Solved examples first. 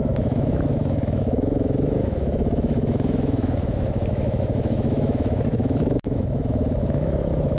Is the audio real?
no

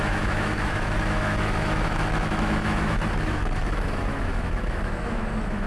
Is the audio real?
no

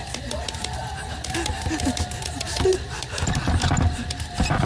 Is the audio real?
yes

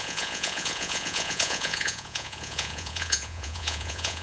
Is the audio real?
no